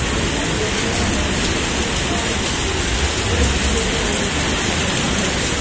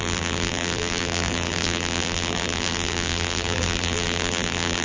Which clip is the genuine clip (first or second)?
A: first